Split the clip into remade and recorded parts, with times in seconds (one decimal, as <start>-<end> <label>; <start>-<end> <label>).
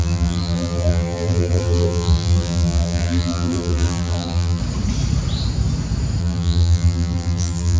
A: 0.0-4.6 remade; 4.6-6.2 recorded; 6.2-7.8 remade